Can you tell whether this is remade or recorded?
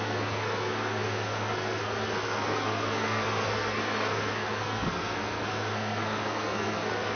remade